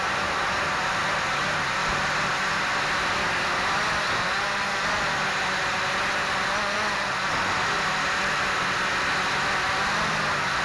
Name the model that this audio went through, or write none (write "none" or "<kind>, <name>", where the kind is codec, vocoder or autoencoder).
none